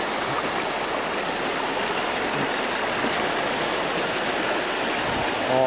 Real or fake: real